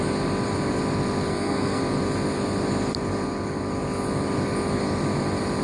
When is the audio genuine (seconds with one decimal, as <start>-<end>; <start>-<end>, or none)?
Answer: 0.0-1.3; 1.8-5.6